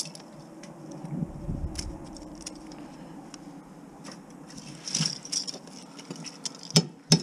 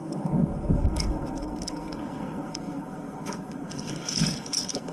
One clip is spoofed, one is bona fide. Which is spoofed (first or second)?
second